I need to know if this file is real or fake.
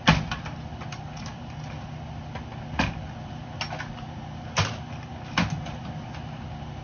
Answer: real